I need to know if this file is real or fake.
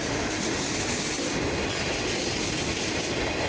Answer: real